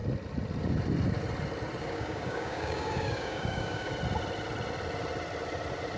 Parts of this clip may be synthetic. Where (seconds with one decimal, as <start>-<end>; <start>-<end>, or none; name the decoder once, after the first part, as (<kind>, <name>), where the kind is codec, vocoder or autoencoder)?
1.8-3.9 (codec, DAC)